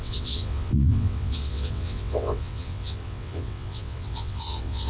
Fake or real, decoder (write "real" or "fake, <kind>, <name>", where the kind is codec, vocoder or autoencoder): fake, vocoder, WaveNeXt